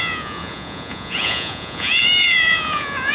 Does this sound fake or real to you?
fake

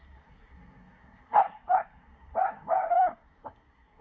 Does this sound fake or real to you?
fake